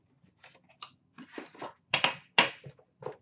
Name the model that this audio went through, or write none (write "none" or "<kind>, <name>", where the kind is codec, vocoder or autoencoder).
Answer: none